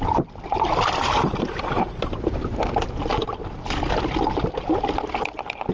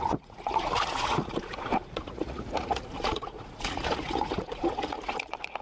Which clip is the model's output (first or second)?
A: second